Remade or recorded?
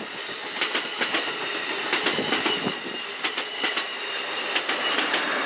recorded